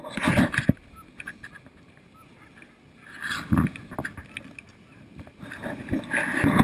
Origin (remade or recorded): recorded